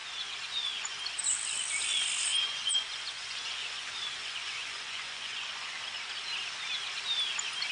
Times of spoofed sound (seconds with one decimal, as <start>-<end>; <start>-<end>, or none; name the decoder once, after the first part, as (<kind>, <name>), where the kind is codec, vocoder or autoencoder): 0.0-1.0 (vocoder, Vocos); 2.3-5.8